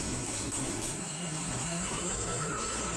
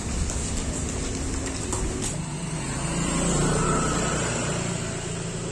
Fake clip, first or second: first